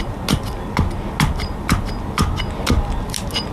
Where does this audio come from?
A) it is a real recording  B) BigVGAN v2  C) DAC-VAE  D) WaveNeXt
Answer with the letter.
A